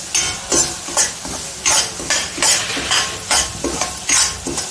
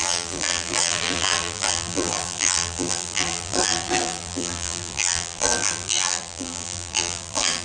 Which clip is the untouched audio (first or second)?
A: first